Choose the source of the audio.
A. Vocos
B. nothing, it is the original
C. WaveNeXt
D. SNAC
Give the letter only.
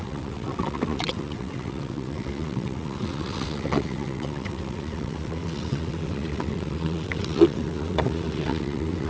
C